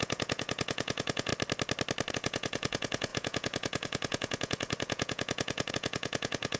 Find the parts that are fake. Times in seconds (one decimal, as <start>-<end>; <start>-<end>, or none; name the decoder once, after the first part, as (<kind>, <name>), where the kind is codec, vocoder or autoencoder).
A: 0.0-1.3 (vocoder, Vocos); 2.1-6.6